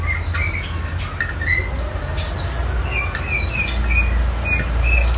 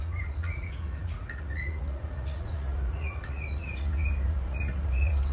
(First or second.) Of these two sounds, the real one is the first